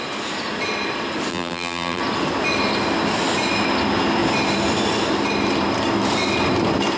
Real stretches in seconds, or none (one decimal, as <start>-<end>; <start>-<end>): 0.0-1.3; 2.0-7.0